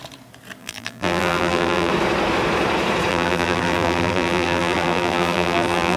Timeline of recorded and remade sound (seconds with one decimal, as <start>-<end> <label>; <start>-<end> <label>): 0.0-0.6 recorded; 0.6-1.9 remade; 1.9-3.1 recorded; 3.1-6.0 remade